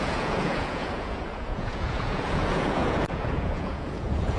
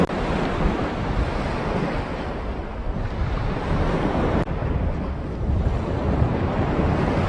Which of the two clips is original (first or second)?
second